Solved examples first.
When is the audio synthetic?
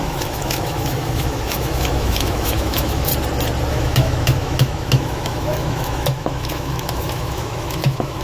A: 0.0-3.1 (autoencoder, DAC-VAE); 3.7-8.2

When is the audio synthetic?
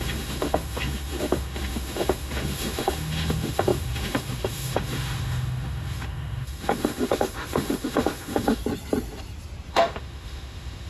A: 0.0-8.6 (autoencoder, DAC-VAE); 9.7-10.9